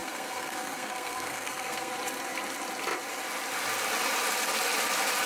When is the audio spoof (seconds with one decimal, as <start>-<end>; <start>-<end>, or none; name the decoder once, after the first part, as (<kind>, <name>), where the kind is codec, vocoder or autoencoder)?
0.0-1.9 (codec, SNAC)